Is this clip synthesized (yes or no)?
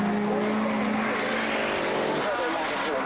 no